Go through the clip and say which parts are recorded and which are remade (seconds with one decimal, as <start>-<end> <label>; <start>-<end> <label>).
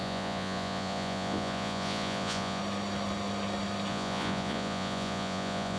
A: 0.0-2.6 remade; 2.6-3.9 recorded; 3.9-5.8 remade